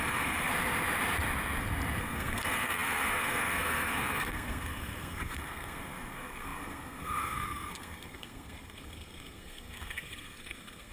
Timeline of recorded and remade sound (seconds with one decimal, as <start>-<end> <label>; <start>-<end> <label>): 0.0-0.5 remade; 0.5-2.0 recorded; 2.0-10.9 remade